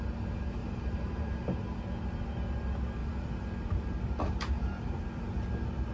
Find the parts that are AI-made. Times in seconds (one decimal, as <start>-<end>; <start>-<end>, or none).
0.6-1.8; 3.0-3.5; 4.2-5.0